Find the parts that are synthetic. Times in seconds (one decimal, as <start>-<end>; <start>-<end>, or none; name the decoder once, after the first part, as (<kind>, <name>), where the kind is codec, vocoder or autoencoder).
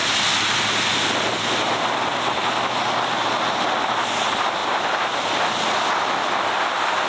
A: none